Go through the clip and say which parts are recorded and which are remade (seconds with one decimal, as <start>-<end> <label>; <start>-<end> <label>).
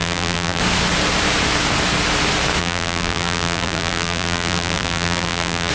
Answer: 0.0-0.6 remade; 0.6-2.6 recorded; 2.6-5.7 remade